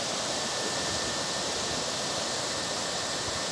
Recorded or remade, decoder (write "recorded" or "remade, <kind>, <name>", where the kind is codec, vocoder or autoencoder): recorded